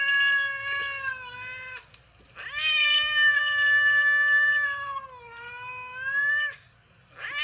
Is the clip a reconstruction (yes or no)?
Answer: no